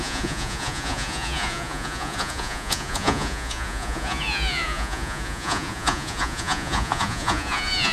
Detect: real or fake fake